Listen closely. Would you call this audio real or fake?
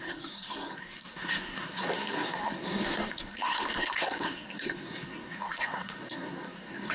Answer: fake